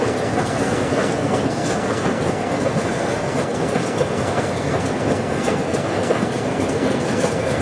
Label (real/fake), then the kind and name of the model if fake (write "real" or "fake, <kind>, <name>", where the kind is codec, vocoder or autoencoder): fake, codec, SNAC